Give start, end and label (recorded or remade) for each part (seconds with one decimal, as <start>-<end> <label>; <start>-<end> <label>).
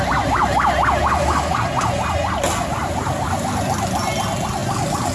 0.0-5.1 recorded